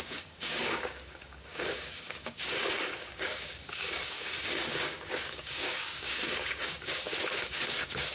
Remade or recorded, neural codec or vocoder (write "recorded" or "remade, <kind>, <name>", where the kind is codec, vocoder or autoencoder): remade, codec, DAC